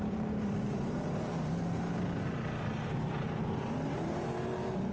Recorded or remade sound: remade